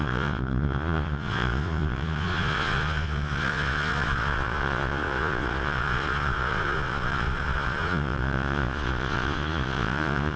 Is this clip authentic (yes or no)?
no